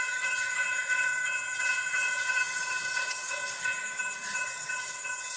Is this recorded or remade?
remade